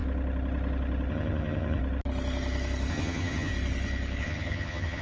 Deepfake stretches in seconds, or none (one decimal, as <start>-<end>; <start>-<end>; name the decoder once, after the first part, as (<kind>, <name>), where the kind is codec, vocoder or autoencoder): 1.1-1.8 (vocoder, HiFi-GAN); 2.9-3.5; 4.2-5.0